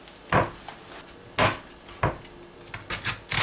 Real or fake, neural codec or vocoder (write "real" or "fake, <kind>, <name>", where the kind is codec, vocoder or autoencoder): real